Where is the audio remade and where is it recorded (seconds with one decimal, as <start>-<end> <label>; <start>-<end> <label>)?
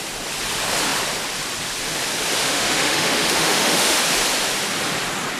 0.0-2.4 recorded; 2.4-4.0 remade; 4.0-5.4 recorded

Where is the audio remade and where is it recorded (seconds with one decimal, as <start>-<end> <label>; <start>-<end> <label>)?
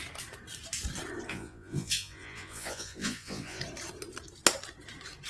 0.0-1.3 recorded; 1.3-3.6 remade; 3.6-5.3 recorded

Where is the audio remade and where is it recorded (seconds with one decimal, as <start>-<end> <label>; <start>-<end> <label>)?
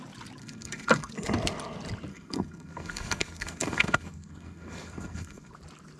0.0-0.4 recorded; 0.4-1.1 remade; 1.1-2.1 recorded; 2.1-5.5 remade; 5.5-6.0 recorded